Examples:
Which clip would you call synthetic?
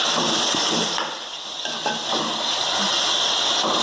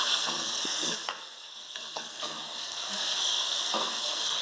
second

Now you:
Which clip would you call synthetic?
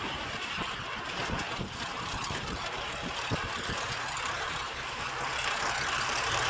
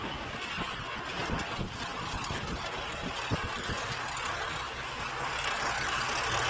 first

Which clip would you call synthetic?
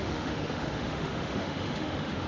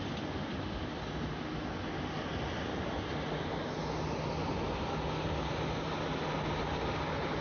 first